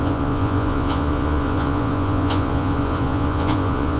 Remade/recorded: remade